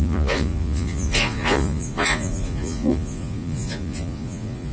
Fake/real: fake